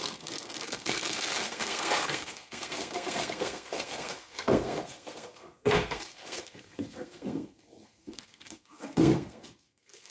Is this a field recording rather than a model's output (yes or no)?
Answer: no